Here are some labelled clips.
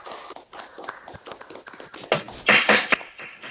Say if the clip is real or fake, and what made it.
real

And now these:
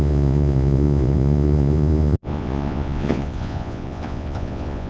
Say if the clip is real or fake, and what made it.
fake, vocoder, Vocos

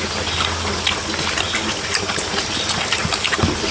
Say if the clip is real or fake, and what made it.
real